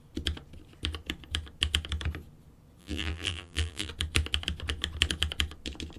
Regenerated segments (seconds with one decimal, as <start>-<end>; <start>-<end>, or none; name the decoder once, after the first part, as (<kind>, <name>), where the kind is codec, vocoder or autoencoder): 2.8-3.9 (vocoder, BigVGAN v2)